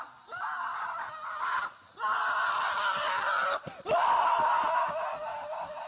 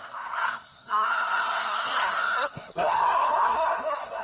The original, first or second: first